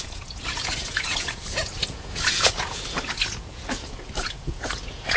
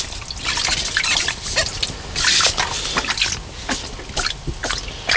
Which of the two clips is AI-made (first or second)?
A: first